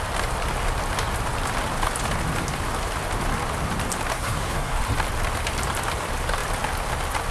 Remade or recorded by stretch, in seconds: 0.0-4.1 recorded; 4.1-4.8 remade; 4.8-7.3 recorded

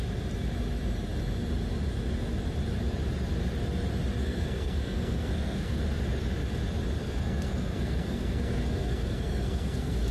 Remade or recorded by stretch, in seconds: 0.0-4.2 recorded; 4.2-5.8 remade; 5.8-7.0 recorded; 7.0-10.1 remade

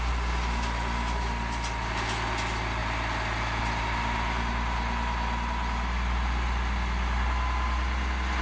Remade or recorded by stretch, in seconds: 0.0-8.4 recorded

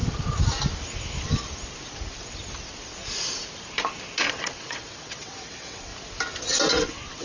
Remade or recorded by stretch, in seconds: 0.0-4.3 recorded; 4.3-5.9 remade; 5.9-6.7 recorded; 6.7-7.2 remade

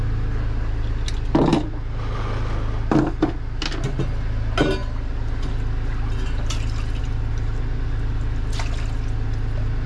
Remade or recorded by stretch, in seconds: 0.0-9.9 recorded